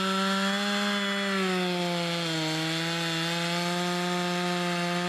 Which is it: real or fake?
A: real